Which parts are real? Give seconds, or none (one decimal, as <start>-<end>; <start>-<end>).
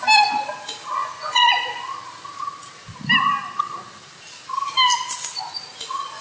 0.0-1.0; 1.9-6.2